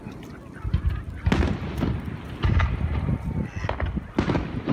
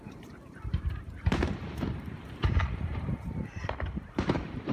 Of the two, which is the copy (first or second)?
second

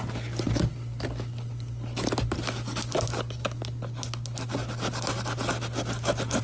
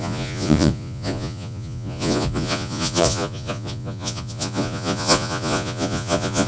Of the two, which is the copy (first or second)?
second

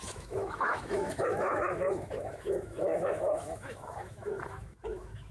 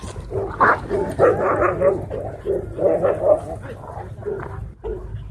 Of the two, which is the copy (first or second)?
first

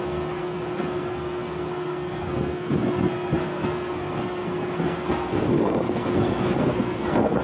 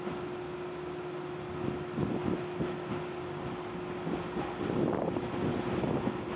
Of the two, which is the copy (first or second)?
first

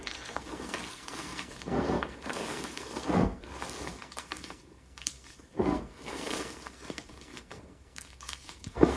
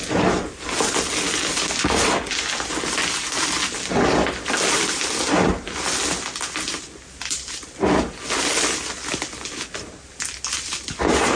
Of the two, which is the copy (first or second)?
first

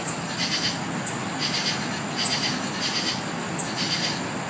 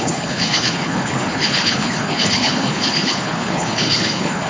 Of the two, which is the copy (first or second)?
second